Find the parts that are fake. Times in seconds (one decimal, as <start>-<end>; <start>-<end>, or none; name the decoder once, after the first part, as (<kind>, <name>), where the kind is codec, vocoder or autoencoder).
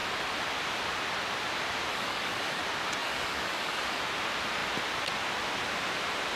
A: 1.9-2.6 (codec, DAC); 3.0-4.0